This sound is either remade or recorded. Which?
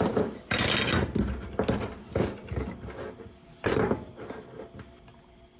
recorded